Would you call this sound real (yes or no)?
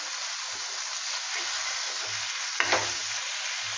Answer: yes